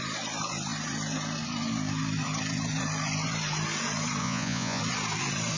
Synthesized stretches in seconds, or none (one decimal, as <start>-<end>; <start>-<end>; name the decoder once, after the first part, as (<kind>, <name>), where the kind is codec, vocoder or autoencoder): 4.2-4.8 (vocoder, Vocos)